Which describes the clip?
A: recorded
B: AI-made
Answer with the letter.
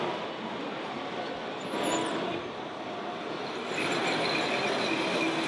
A